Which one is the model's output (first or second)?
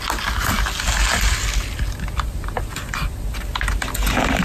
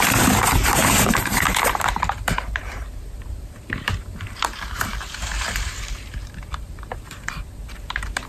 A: second